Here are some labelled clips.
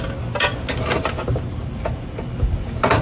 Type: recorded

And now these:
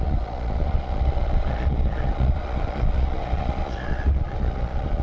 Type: remade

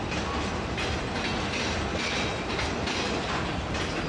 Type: recorded